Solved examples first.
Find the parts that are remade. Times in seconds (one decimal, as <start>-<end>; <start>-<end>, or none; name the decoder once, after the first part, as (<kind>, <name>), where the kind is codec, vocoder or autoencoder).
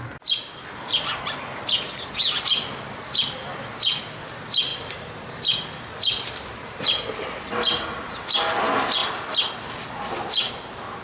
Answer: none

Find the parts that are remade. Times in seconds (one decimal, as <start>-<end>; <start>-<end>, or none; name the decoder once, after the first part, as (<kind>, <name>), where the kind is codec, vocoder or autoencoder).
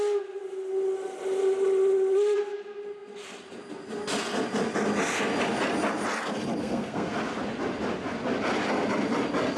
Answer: 6.6-7.1 (codec, SNAC)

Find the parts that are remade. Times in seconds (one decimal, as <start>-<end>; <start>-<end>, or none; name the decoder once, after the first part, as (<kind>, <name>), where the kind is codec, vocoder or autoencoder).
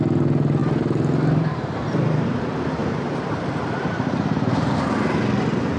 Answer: 0.6-2.4 (vocoder, BigVGAN v2); 2.8-5.8